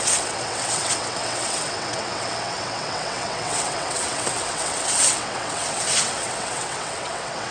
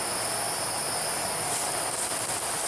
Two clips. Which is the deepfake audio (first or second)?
first